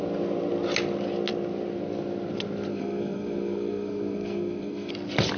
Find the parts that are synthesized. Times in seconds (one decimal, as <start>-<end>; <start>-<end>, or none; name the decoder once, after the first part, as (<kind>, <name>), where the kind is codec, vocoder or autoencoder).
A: 2.7-4.9 (codec, SNAC)